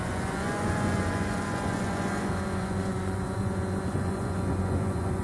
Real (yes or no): no